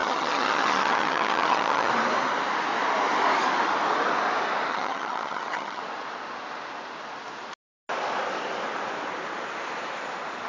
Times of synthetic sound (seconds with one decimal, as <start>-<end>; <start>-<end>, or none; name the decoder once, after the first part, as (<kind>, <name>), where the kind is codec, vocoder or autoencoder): 0.0-1.9 (vocoder, HiFi-GAN); 4.7-5.8